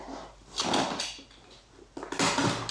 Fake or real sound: real